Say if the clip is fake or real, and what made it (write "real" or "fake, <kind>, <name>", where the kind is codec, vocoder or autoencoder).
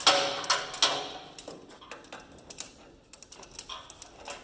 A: real